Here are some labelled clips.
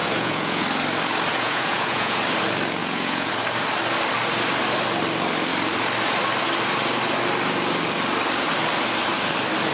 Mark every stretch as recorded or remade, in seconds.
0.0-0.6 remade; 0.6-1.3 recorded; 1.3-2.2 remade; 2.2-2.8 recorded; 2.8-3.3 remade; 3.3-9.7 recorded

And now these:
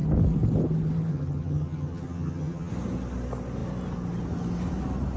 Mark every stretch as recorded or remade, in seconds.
0.0-1.1 recorded; 1.1-2.7 remade; 2.7-5.2 recorded